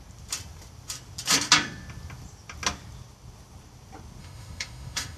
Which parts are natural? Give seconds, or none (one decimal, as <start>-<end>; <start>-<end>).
0.0-4.2